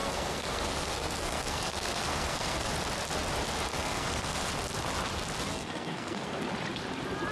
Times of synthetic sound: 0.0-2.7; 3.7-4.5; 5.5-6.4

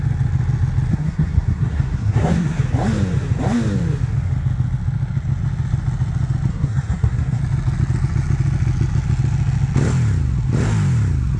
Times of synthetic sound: 0.9-2.6; 6.5-7.4